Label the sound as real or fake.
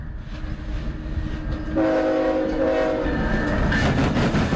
real